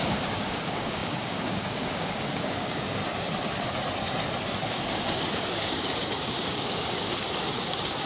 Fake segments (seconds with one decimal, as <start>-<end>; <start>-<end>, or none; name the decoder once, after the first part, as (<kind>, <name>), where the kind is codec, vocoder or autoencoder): 0.0-3.0 (codec, DAC); 4.6-8.1